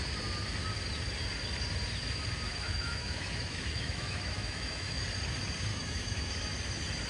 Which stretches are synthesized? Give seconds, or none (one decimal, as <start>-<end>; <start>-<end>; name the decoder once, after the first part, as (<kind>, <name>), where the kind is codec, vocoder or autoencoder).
2.5-5.0 (autoencoder, DAC-VAE); 5.7-6.3